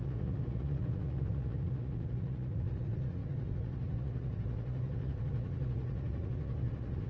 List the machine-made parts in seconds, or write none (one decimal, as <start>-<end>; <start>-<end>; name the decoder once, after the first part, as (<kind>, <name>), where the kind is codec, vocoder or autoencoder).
0.0-7.1 (vocoder, Vocos)